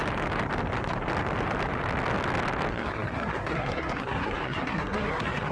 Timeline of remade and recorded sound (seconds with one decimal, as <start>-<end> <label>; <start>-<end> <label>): 0.0-2.7 recorded; 2.7-5.5 remade